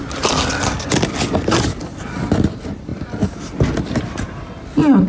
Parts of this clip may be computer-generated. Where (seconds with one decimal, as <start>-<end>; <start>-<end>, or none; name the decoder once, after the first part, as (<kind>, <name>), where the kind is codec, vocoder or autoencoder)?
none